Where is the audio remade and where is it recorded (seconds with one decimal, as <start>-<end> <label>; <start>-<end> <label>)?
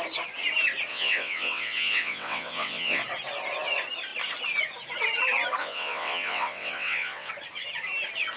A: 0.0-0.9 recorded; 0.9-3.0 remade; 3.0-5.6 recorded; 5.6-7.3 remade; 7.3-8.4 recorded